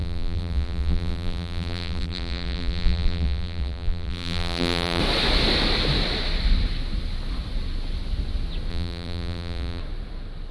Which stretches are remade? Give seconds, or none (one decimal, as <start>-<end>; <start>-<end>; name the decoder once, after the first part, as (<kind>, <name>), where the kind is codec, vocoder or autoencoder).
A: 0.0-5.0 (vocoder, BigVGAN v2); 8.7-9.8